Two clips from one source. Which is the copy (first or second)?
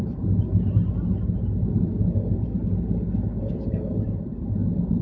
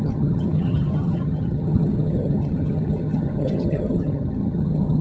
second